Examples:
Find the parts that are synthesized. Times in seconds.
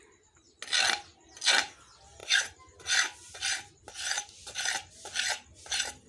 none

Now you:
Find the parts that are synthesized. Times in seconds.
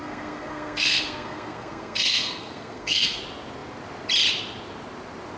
0.0-3.2 (codec, SNAC)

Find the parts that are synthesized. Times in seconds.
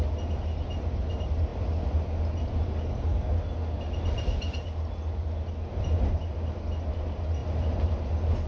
none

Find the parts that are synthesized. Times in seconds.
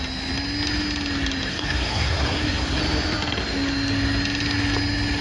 1.5-2.8 (codec, SNAC)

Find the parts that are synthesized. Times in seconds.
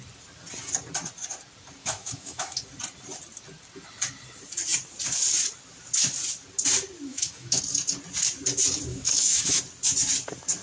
1.8-2.6 (autoencoder, DAC-VAE); 7.1-7.6; 8.9-9.6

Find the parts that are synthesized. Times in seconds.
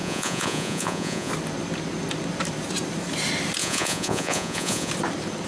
0.0-1.3 (vocoder, Vocos); 3.6-4.9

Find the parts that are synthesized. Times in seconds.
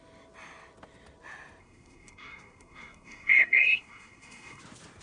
1.6-4.6 (codec, SNAC)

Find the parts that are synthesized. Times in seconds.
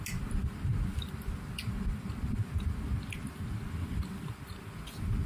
none